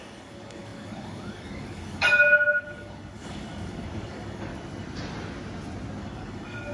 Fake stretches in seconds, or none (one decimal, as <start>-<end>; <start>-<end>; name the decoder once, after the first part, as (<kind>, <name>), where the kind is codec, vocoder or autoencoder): 0.0-4.5 (codec, DAC); 6.0-6.7